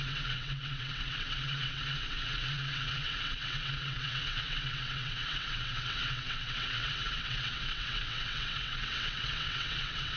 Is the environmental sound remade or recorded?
remade